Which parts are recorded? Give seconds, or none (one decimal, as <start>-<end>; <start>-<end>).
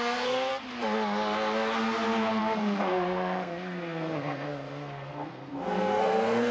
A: 0.5-2.4